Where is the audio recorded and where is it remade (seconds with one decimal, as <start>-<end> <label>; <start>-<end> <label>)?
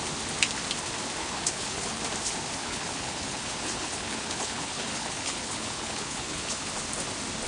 0.0-1.2 recorded; 1.2-2.0 remade; 2.0-2.6 recorded; 2.6-6.7 remade; 6.7-7.5 recorded